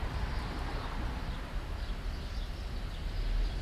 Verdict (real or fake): real